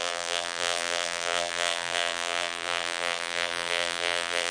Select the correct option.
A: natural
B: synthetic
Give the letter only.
B